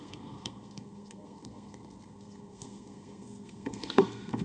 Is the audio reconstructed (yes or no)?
yes